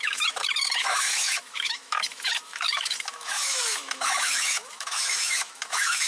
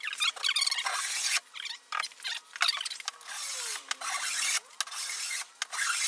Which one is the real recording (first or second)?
second